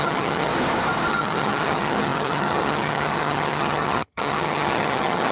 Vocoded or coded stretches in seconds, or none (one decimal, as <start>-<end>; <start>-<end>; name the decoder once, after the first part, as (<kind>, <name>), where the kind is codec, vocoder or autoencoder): 0.0-0.5 (vocoder, HiFi-GAN); 1.1-5.3